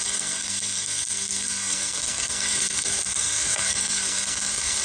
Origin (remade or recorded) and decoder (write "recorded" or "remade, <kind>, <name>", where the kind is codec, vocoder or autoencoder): remade, codec, SNAC